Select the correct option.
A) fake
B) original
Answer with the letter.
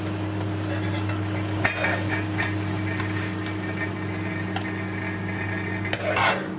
B